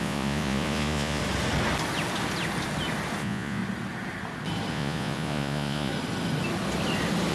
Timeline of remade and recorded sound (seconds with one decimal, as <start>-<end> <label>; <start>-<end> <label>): 0.0-1.2 remade; 1.2-3.2 recorded; 3.2-3.6 remade; 3.6-4.7 recorded; 4.7-5.9 remade; 5.9-7.3 recorded